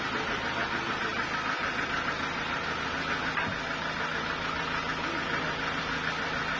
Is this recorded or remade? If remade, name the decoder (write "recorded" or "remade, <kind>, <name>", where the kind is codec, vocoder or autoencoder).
recorded